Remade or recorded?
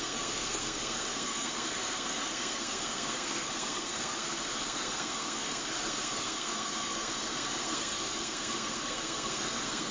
remade